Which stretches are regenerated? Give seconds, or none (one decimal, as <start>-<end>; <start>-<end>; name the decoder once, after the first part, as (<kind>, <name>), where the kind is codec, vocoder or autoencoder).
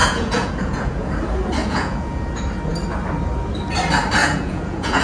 0.0-1.1 (vocoder, Vocos); 1.6-2.2; 4.2-5.0